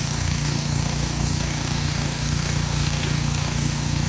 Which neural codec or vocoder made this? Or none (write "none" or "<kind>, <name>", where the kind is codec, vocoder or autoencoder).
codec, DAC